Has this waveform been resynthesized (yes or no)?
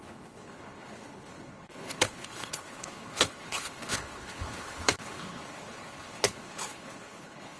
yes